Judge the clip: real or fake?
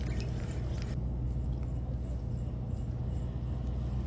real